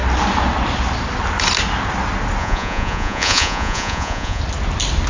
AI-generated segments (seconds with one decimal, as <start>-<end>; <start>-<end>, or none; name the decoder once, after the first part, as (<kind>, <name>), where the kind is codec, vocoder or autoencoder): 2.4-4.4 (vocoder, Vocos)